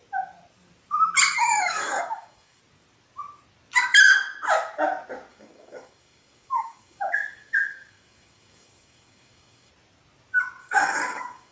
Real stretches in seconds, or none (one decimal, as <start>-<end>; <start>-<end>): 0.0-1.5; 2.6-5.3; 9.7-10.6